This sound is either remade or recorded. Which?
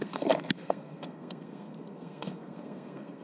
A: remade